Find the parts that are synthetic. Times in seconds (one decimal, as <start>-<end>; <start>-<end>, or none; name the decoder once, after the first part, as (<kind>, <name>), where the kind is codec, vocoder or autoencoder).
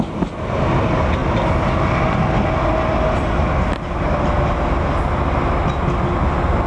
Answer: none